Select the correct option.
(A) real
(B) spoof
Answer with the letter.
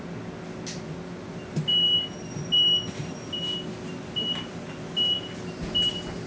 A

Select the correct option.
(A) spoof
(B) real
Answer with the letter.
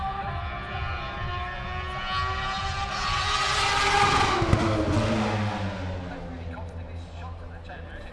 B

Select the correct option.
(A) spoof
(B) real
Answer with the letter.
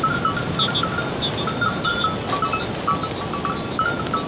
B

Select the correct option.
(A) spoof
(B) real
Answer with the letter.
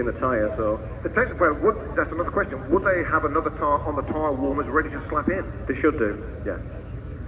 B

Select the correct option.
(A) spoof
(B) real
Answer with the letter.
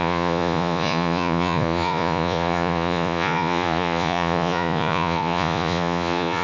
A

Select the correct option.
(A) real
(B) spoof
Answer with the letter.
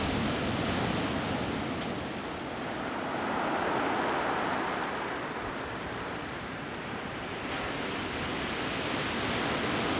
A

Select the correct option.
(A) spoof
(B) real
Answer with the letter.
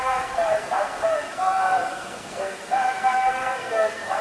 A